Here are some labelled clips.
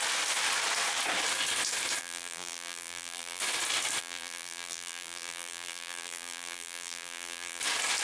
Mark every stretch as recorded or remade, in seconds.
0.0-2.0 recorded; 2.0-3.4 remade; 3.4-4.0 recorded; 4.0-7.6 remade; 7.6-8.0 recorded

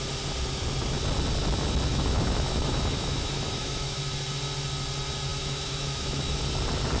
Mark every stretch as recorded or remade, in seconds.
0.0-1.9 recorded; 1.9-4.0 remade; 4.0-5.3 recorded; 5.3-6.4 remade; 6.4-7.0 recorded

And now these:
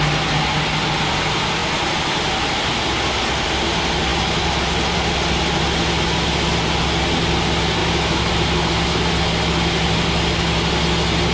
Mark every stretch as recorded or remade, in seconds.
0.0-7.8 recorded; 7.8-8.3 remade; 8.3-11.3 recorded